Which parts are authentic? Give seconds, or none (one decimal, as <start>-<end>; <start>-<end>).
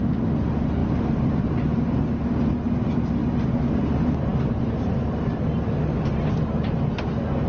0.0-7.5